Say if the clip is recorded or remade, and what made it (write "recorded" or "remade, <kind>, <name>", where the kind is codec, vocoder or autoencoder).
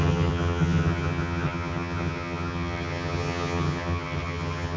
remade, vocoder, HiFi-GAN